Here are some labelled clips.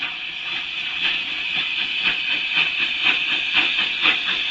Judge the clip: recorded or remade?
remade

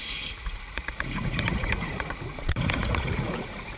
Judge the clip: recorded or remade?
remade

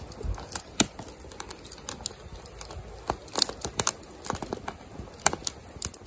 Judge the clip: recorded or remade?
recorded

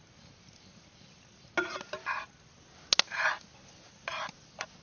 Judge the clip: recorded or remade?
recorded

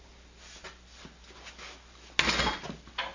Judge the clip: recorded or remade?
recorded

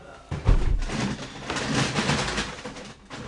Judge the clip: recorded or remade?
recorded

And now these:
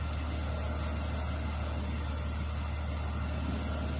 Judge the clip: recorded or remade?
recorded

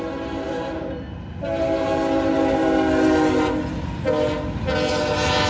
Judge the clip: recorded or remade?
recorded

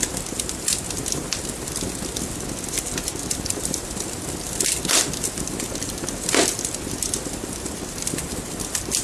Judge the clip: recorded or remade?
recorded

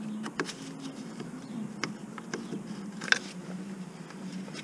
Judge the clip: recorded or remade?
recorded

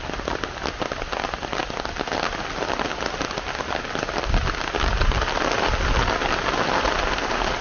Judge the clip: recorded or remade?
recorded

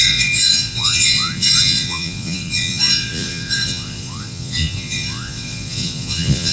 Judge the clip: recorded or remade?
remade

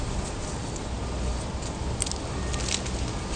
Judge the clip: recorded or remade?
recorded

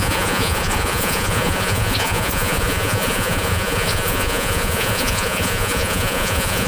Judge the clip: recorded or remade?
remade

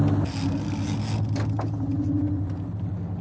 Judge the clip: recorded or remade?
recorded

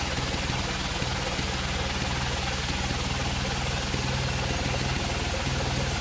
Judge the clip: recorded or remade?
recorded